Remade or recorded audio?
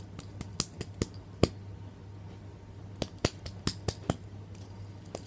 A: recorded